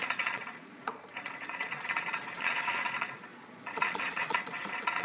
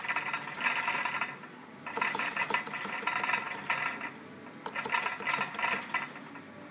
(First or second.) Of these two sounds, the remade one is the first